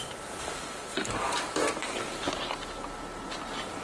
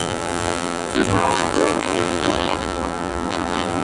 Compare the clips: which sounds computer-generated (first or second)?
second